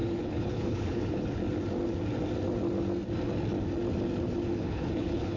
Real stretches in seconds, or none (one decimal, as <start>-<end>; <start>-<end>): 1.4-4.6